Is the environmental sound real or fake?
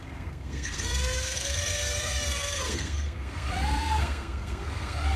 fake